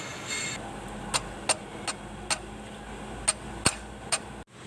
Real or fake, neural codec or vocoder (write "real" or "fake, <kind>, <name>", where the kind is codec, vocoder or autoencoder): real